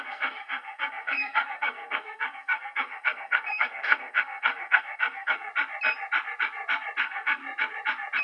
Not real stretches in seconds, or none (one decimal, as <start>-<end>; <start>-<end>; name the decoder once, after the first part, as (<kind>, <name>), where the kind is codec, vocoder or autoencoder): 0.0-5.5 (codec, SNAC); 7.0-7.4